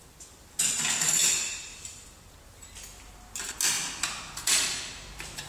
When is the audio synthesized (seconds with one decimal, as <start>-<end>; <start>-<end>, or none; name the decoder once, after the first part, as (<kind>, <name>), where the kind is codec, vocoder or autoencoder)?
none